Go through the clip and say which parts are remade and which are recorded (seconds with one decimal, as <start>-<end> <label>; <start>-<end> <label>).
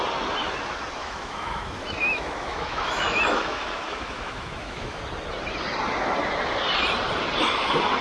0.0-1.0 recorded; 1.0-5.0 remade; 5.0-8.0 recorded